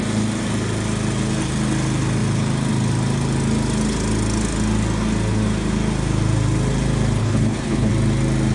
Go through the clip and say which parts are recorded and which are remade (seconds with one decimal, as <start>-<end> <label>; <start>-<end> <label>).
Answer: 0.0-7.2 recorded; 7.2-7.9 remade; 7.9-8.5 recorded